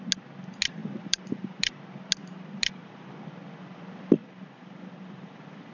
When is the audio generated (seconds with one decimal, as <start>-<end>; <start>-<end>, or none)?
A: 0.8-1.7; 2.2-3.1; 4.2-5.7